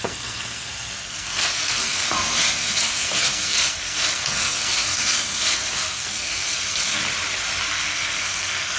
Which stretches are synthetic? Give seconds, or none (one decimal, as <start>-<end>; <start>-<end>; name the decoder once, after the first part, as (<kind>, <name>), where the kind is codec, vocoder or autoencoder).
0.0-7.0 (codec, SNAC); 7.7-8.8